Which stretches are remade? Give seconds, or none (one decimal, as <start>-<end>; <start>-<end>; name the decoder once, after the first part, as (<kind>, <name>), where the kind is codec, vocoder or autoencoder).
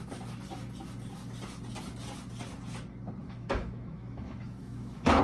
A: 3.2-5.2 (autoencoder, DAC-VAE)